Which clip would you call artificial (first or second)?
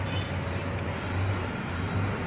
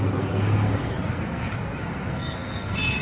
second